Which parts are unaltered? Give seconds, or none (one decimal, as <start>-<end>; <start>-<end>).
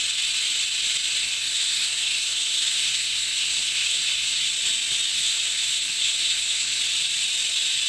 0.0-1.2; 4.5-5.1; 6.8-7.9